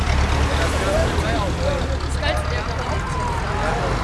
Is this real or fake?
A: real